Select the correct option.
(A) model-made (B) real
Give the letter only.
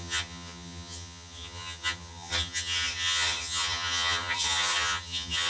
A